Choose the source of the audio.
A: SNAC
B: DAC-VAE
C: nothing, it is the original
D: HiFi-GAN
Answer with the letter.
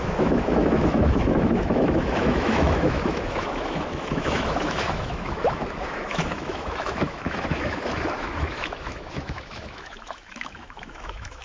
B